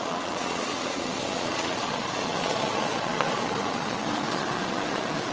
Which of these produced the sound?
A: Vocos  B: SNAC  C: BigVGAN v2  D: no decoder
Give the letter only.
A